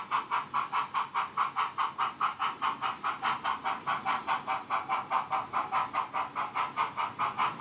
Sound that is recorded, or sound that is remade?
recorded